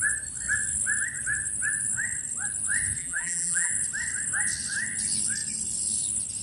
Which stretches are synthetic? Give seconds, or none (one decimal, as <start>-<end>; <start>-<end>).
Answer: 3.0-3.7